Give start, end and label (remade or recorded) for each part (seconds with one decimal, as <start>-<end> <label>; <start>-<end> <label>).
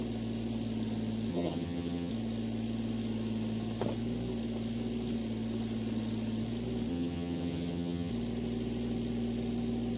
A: 0.0-1.3 recorded; 1.3-2.1 remade; 2.1-6.9 recorded; 6.9-8.1 remade; 8.1-10.0 recorded